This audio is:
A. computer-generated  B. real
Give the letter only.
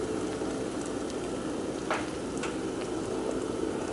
B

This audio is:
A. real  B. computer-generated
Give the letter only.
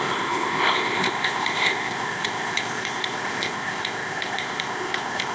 B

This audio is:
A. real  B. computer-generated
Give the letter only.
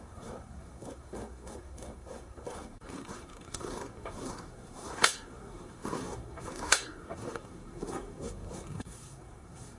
B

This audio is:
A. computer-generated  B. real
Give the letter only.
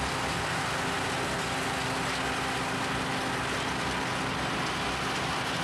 B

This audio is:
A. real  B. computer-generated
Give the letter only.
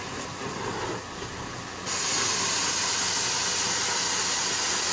A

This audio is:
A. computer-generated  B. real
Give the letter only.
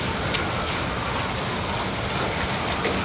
B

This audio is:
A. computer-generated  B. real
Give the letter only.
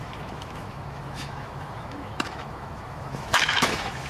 A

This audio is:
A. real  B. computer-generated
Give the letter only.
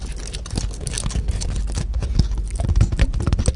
A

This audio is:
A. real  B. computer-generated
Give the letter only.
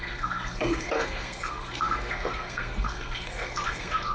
B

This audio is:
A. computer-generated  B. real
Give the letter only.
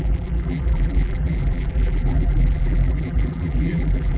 A